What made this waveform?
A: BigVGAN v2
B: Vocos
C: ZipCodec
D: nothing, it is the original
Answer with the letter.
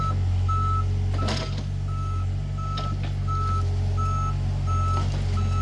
D